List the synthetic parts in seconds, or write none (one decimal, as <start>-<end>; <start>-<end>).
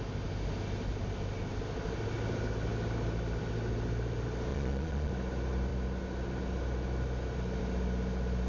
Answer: 4.5-5.1